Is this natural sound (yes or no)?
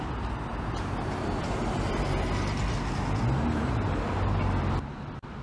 yes